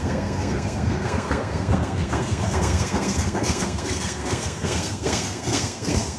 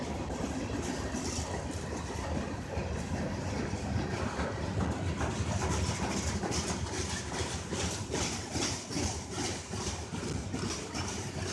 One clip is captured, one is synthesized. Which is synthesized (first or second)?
first